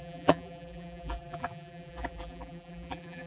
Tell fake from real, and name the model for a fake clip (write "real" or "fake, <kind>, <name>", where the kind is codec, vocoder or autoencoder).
fake, vocoder, BigVGAN v2